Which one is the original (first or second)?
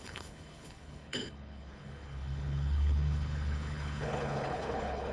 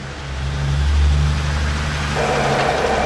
second